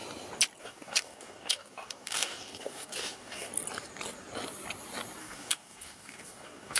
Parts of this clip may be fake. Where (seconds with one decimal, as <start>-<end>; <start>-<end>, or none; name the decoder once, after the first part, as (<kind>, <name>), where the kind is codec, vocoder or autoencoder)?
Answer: 0.6-3.5 (codec, DAC); 5.2-6.8